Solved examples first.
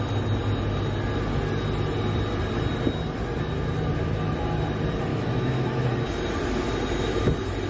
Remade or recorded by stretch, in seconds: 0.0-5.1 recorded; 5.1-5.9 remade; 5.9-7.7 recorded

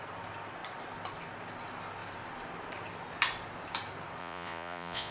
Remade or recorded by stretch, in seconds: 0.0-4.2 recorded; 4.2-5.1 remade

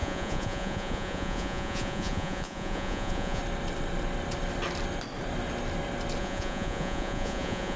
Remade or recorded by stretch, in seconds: 0.0-3.4 remade; 3.4-6.2 recorded; 6.2-7.8 remade

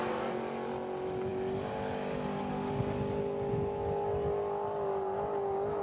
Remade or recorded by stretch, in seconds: 0.0-5.8 recorded